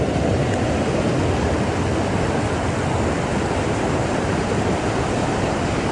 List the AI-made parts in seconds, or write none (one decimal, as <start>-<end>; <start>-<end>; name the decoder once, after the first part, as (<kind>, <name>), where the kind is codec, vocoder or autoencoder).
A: 0.0-0.4 (vocoder, BigVGAN v2); 3.9-5.9